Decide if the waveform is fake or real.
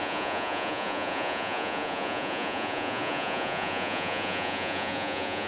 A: fake